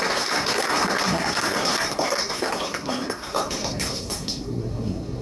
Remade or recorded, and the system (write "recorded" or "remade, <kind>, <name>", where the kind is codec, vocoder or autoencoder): remade, codec, SNAC